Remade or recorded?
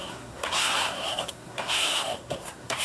remade